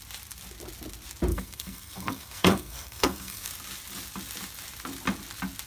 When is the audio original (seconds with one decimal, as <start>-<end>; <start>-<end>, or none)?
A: 0.0-1.3; 3.5-5.7